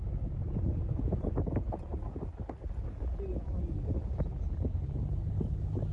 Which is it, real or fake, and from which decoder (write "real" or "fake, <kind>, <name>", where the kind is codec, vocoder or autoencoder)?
real